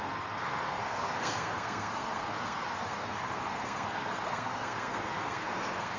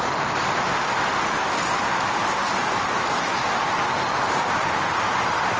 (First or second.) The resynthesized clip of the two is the first